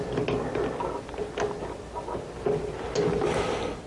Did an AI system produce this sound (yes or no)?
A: no